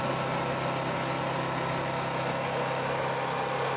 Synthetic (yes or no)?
no